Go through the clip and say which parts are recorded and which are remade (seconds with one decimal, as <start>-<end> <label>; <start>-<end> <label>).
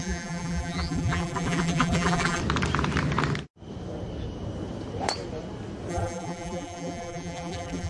0.0-2.4 remade; 2.4-5.9 recorded; 5.9-7.9 remade